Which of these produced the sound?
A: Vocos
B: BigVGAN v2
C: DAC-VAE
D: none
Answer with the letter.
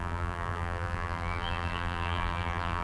B